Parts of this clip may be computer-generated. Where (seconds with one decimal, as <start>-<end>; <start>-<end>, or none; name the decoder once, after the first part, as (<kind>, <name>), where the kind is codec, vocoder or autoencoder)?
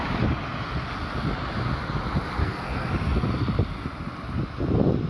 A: 2.4-2.9 (codec, SNAC)